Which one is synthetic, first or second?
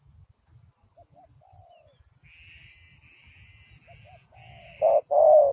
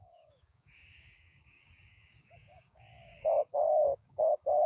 second